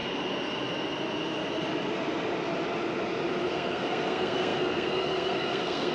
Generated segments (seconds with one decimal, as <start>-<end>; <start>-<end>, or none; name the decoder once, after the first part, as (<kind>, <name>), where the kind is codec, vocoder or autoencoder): 3.5-5.9 (codec, SNAC)

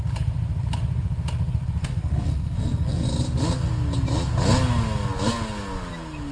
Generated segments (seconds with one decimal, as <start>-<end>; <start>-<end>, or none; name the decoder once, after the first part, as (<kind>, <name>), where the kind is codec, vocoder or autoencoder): 1.8-3.0 (codec, SNAC)

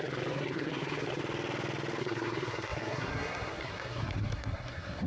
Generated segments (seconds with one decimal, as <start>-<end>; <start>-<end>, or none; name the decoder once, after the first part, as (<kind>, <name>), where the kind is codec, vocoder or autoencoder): 0.0-1.2 (codec, SNAC); 2.0-5.1

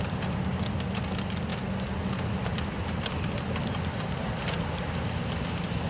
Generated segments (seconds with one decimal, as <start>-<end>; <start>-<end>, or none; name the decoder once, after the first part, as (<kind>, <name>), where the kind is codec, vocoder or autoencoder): none